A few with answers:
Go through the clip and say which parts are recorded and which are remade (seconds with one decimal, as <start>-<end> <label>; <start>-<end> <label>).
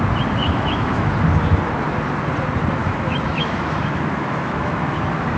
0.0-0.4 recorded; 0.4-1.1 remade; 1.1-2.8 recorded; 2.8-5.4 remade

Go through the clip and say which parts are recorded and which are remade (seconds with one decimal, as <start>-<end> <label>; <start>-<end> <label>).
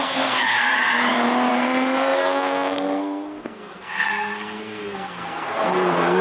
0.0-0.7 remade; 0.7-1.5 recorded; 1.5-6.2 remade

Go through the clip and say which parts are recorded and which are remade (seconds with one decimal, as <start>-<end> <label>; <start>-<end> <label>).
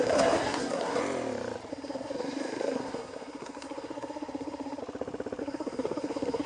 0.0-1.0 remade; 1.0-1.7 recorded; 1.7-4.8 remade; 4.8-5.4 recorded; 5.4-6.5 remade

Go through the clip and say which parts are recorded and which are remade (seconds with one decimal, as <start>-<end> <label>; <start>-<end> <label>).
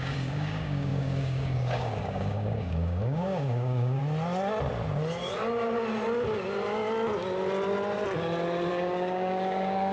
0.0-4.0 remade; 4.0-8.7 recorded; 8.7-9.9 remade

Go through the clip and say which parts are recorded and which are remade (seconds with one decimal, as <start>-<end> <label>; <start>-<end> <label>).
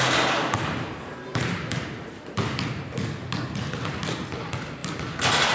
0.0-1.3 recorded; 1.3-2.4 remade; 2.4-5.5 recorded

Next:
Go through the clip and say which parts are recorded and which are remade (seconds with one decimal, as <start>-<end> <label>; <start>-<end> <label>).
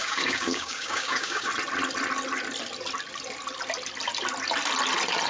0.0-1.5 remade; 1.5-5.3 recorded